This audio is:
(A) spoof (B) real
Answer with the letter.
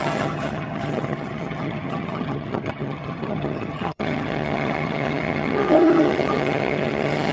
A